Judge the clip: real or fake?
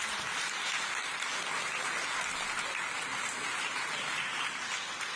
real